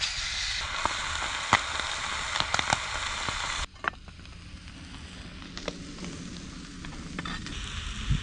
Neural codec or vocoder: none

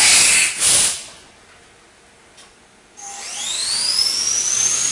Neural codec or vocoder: none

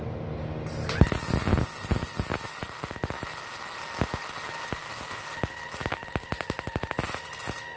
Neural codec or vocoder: none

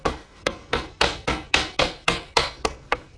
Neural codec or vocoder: codec, SNAC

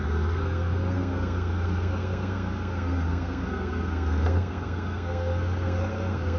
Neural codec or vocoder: codec, SNAC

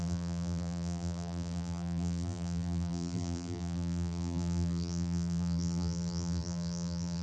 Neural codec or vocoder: vocoder, BigVGAN v2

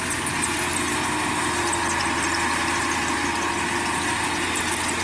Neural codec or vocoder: none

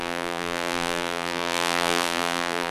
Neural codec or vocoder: vocoder, BigVGAN v2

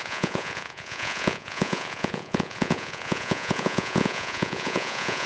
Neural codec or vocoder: vocoder, Vocos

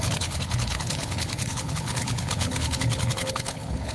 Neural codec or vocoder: codec, HILCodec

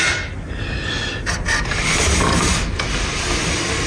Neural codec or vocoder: none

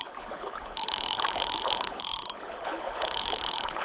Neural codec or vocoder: codec, HILCodec